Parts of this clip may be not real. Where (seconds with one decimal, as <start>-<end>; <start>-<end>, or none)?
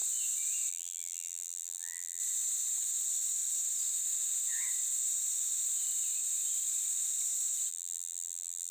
0.7-2.2; 7.7-8.7